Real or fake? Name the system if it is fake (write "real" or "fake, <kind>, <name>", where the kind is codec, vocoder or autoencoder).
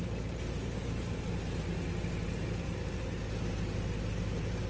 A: real